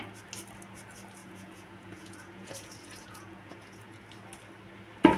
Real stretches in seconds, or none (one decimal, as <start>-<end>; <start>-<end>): 0.0-1.2; 4.0-5.2